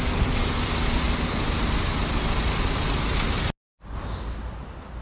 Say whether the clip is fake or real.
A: real